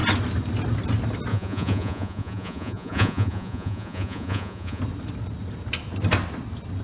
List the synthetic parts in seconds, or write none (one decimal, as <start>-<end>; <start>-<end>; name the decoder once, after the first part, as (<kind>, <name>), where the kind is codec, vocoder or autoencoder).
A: 1.3-4.8 (vocoder, Vocos)

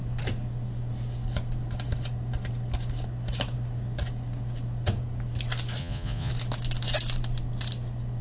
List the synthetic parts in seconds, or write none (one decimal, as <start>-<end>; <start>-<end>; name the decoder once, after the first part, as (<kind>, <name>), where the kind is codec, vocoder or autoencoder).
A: 5.8-6.3 (vocoder, Vocos)

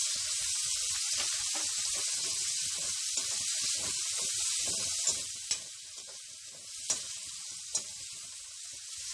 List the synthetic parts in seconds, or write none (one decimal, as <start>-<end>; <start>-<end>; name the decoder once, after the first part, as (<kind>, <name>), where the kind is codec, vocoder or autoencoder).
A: 1.9-3.0 (vocoder, Vocos); 8.1-9.1

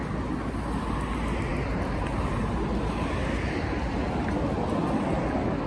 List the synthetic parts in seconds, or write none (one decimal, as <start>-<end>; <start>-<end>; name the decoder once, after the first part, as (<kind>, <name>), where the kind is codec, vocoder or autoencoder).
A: none

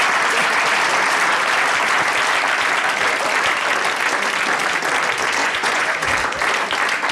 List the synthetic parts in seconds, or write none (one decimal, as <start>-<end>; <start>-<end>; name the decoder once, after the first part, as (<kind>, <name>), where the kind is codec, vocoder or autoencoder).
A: 5.4-6.1 (vocoder, Vocos)